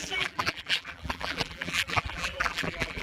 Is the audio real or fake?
fake